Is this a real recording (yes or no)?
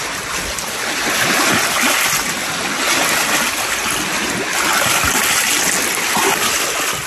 yes